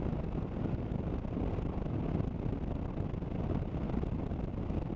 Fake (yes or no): no